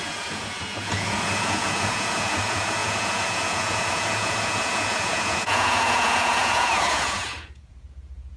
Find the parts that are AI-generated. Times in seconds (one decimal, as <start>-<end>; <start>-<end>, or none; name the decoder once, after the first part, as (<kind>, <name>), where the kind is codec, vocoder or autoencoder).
0.0-8.4 (vocoder, Vocos)

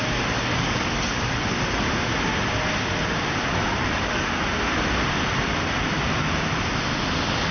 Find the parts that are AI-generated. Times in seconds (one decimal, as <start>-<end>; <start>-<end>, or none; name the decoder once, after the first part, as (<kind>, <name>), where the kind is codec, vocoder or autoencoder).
0.5-1.2 (codec, DAC); 3.8-4.3

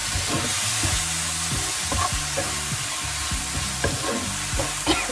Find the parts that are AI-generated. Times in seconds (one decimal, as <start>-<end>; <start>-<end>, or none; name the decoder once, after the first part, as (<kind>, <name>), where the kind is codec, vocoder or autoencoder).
none

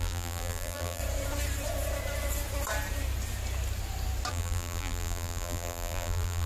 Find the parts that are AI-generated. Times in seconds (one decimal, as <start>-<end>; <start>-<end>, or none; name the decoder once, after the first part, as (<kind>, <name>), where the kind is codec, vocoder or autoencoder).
0.0-1.0 (vocoder, BigVGAN v2); 4.3-6.5

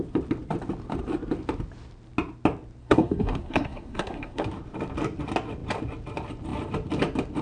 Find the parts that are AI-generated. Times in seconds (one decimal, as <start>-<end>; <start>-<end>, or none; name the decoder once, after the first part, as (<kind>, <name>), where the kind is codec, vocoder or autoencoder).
2.8-4.4 (codec, SNAC)